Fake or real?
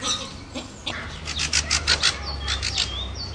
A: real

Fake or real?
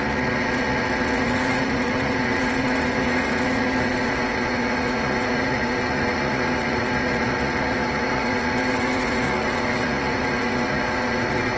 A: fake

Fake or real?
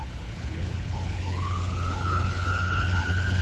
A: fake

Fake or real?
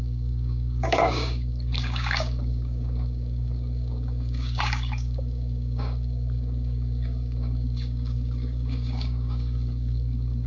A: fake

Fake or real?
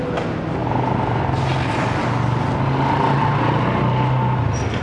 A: real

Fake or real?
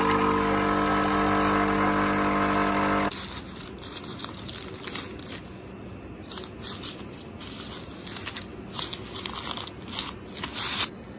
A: real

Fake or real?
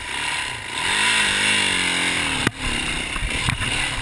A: real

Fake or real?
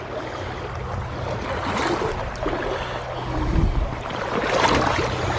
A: real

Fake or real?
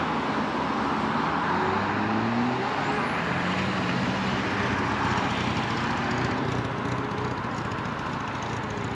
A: real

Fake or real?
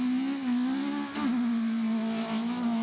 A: real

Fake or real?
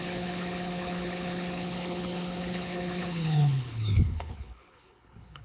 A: fake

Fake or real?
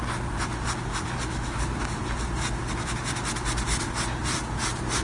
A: real